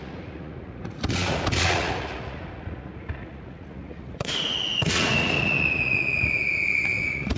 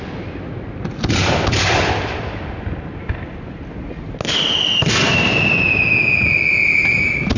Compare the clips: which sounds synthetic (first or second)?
first